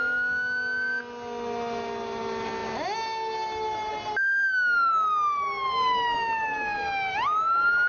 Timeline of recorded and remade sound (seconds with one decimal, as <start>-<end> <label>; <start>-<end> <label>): 0.0-7.9 recorded